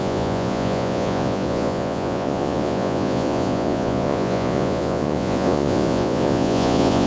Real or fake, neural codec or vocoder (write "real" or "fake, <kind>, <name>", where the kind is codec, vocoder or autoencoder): fake, vocoder, Vocos